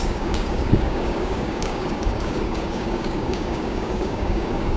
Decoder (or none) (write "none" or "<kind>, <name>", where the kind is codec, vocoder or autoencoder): codec, DAC